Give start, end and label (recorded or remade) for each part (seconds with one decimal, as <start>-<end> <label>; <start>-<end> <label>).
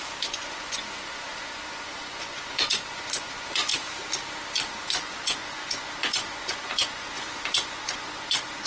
0.0-3.7 remade; 3.7-4.7 recorded; 4.7-8.7 remade